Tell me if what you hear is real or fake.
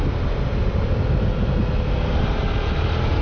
real